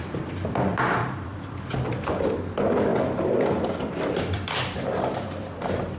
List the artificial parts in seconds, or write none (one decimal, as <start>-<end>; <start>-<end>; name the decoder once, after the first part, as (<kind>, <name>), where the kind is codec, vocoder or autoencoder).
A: 0.0-2.9 (vocoder, BigVGAN v2); 3.6-6.0